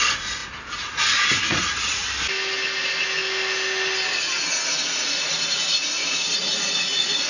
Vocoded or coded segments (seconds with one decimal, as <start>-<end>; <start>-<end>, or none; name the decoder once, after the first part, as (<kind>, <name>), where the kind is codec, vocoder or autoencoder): 0.0-2.0 (vocoder, Vocos); 4.1-7.3